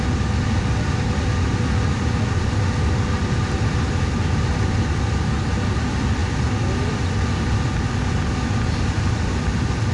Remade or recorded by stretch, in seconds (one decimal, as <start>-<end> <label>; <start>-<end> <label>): 0.0-9.9 recorded